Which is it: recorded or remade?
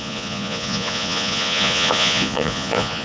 remade